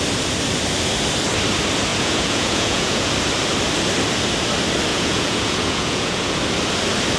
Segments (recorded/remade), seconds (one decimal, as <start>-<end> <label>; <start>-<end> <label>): 0.0-1.9 recorded; 1.9-3.1 remade; 3.1-4.9 recorded; 4.9-6.4 remade; 6.4-7.2 recorded